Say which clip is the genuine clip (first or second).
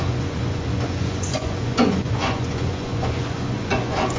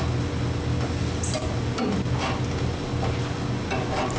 second